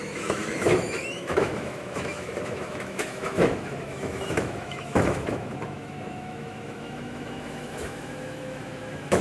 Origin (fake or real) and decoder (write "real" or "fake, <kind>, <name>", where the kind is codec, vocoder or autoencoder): fake, autoencoder, DAC-VAE